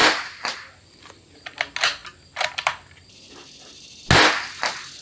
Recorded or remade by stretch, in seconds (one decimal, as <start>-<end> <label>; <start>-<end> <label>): 0.0-0.8 remade; 0.8-5.0 recorded